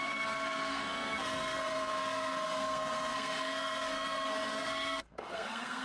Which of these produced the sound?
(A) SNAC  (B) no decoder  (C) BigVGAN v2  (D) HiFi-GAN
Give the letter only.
A